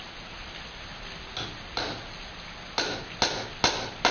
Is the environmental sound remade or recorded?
recorded